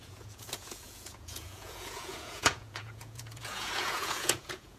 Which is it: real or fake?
fake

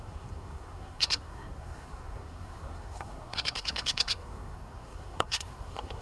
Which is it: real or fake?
fake